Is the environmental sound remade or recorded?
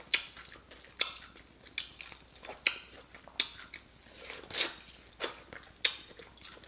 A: recorded